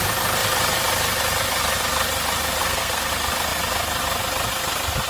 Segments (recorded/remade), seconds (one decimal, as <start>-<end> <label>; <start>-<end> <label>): 0.0-2.6 recorded; 2.6-3.1 remade; 3.1-5.1 recorded